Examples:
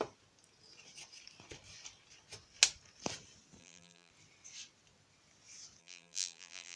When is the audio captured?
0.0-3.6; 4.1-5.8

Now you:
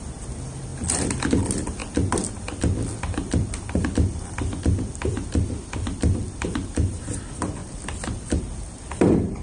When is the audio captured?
1.8-2.3

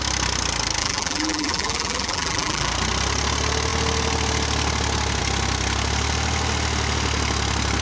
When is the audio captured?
0.0-0.8; 2.7-7.8

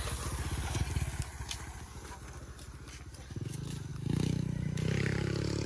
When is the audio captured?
0.0-1.3; 2.1-5.7